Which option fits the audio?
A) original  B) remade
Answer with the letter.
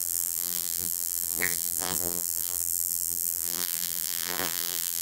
B